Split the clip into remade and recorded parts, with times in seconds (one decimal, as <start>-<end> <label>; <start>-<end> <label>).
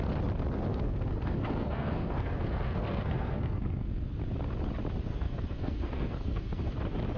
0.0-0.7 recorded; 0.7-4.1 remade; 4.1-5.1 recorded; 5.1-6.8 remade; 6.8-7.2 recorded